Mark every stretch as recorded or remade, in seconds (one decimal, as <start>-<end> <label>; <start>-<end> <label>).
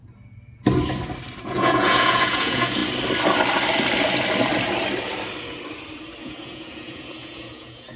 0.0-1.4 recorded; 1.4-2.8 remade; 2.8-6.2 recorded; 6.2-8.0 remade